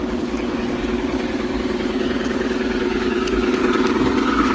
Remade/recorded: remade